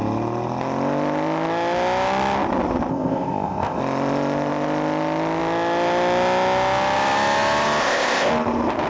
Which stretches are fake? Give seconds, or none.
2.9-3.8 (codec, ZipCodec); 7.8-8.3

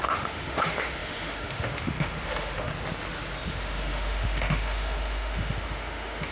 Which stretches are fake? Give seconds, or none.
0.0-2.7 (autoencoder, DAC-VAE); 3.5-6.3

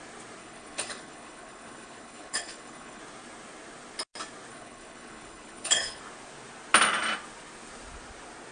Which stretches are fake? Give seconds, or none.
0.4-3.0 (codec, HILCodec); 4.5-6.0

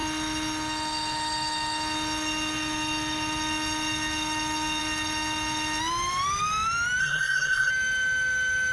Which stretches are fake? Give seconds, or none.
7.0-7.7 (codec, SNAC)

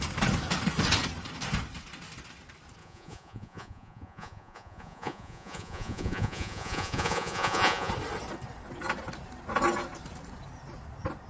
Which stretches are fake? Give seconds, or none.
2.8-7.9 (vocoder, Vocos)

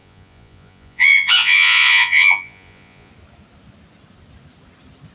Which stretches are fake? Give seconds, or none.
0.0-3.1 (vocoder, Vocos)